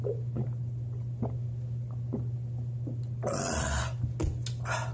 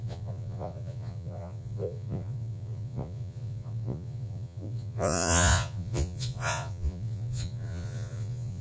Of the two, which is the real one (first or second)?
first